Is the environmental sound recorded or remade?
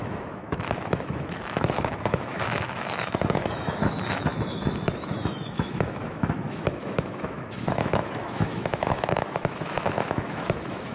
remade